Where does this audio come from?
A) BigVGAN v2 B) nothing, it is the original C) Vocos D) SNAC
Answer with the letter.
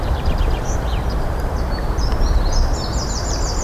A